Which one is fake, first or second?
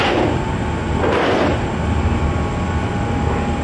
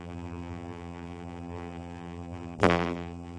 second